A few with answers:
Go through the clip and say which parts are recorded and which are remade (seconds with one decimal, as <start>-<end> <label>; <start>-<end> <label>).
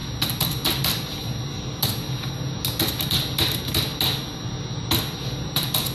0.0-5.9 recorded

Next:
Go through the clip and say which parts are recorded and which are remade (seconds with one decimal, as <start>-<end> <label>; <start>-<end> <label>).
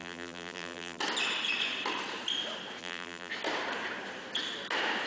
0.0-1.0 remade; 1.0-2.8 recorded; 2.8-3.3 remade; 3.3-5.1 recorded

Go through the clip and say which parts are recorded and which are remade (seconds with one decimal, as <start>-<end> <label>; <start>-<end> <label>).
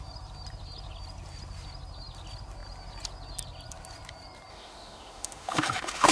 0.0-4.5 recorded; 4.5-6.1 remade